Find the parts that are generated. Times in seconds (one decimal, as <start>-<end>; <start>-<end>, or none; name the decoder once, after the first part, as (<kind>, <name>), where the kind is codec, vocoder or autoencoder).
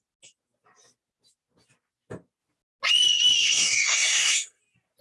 3.4-4.6 (codec, SNAC)